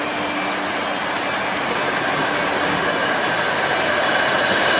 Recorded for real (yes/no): yes